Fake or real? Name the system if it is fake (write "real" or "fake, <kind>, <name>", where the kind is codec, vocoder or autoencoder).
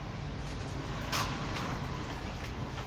real